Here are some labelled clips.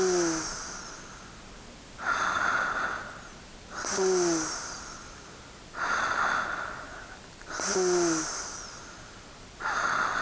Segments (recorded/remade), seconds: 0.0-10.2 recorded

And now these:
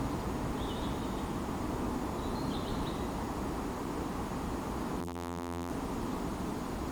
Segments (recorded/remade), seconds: 0.0-5.0 recorded; 5.0-5.7 remade; 5.7-6.9 recorded

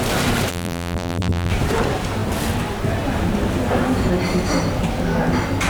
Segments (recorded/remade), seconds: 0.0-0.5 recorded; 0.5-1.5 remade; 1.5-5.7 recorded

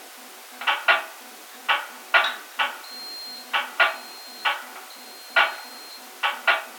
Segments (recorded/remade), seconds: 0.0-6.8 recorded

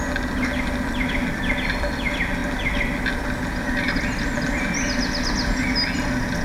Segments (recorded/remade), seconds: 0.0-6.4 recorded